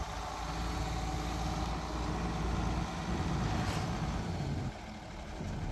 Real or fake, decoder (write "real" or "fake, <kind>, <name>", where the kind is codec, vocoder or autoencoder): real